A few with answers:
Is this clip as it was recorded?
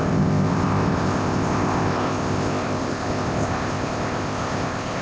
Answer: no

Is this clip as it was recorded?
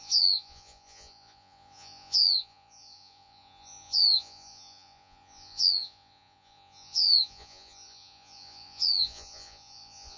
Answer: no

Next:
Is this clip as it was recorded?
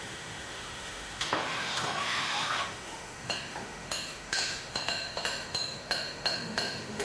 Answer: no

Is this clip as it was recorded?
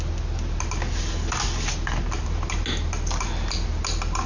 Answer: yes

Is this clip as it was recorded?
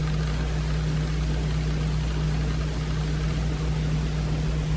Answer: yes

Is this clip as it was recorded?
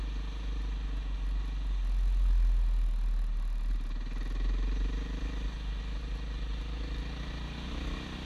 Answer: yes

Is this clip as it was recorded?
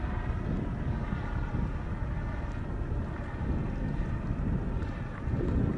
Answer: yes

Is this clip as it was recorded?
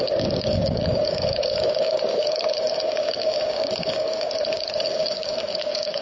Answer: no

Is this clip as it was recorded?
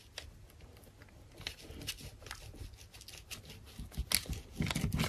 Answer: yes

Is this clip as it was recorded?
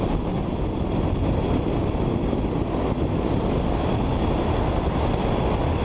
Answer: yes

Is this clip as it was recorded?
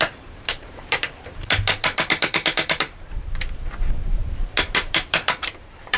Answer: no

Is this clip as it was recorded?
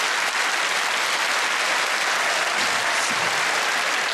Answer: yes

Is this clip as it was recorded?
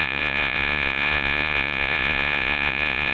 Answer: no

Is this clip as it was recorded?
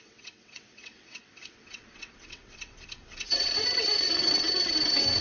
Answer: no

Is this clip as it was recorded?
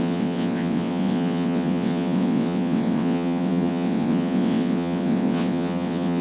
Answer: no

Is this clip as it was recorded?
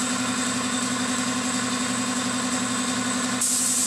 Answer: yes